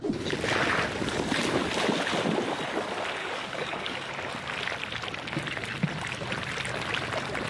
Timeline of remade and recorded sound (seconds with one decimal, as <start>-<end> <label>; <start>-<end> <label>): 0.0-3.2 recorded; 3.2-4.1 remade; 4.1-7.5 recorded